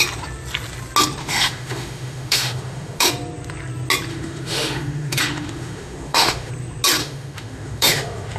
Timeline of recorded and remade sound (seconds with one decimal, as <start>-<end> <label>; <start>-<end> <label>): 0.0-1.2 recorded; 1.2-3.1 remade; 3.1-4.1 recorded; 4.1-6.5 remade; 6.5-7.0 recorded; 7.0-8.4 remade